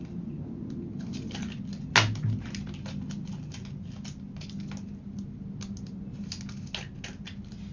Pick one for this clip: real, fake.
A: real